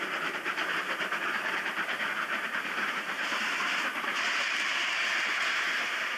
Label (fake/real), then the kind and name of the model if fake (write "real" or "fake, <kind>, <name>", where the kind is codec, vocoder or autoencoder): fake, vocoder, BigVGAN v2